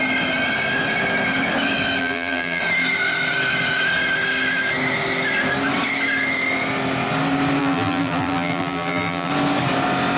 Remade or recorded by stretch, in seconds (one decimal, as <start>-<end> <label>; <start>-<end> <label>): 0.0-2.0 recorded; 2.0-2.6 remade; 2.6-7.6 recorded; 7.6-9.3 remade; 9.3-10.2 recorded